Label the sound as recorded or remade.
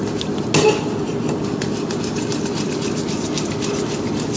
recorded